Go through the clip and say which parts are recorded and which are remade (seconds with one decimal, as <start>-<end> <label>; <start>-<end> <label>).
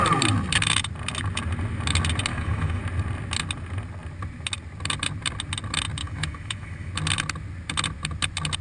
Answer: 0.0-2.3 recorded; 2.3-2.8 remade; 2.8-6.0 recorded; 6.0-6.9 remade; 6.9-8.6 recorded